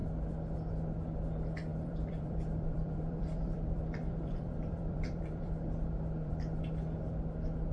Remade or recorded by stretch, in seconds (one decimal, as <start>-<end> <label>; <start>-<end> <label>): 0.0-1.7 recorded; 1.7-6.3 remade; 6.3-7.7 recorded